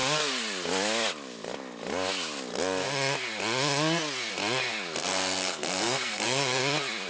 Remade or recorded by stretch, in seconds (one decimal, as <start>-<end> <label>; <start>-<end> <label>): 0.0-5.0 recorded; 5.0-6.6 remade; 6.6-7.1 recorded